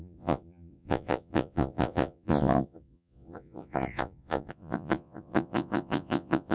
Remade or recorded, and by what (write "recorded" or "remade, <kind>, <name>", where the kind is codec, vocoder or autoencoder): remade, vocoder, Vocos